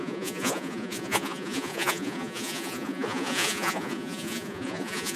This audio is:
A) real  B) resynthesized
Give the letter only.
B